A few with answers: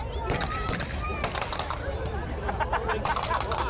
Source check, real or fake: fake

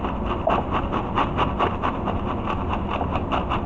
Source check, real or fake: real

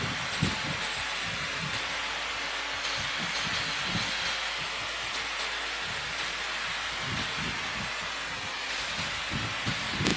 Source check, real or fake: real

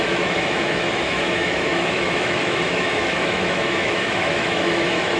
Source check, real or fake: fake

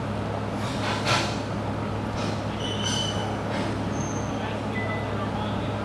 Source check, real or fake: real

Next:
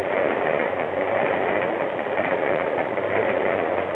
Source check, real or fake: fake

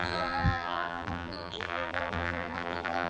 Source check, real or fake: fake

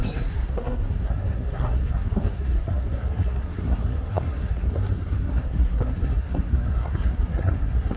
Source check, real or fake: fake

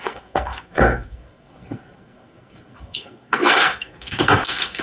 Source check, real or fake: fake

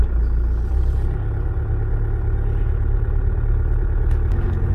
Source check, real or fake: real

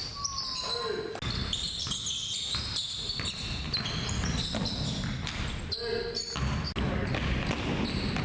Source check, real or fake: real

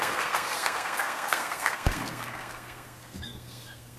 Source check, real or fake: fake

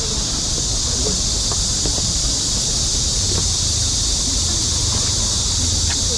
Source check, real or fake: real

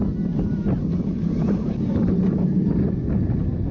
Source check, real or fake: real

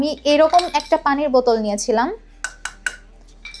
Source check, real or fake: real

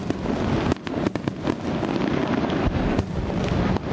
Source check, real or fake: real